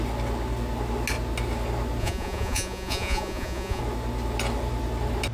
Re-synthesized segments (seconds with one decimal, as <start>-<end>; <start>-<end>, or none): 2.0-3.8